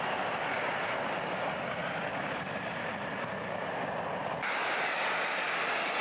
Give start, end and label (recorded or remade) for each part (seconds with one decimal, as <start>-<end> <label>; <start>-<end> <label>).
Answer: 0.0-1.8 recorded; 1.8-5.4 remade; 5.4-6.0 recorded